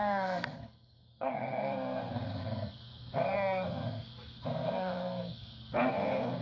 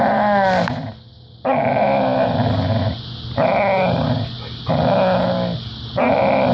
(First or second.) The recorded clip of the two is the second